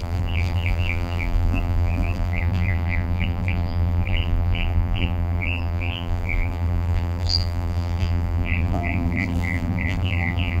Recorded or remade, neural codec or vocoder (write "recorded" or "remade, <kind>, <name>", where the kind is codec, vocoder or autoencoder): remade, vocoder, BigVGAN v2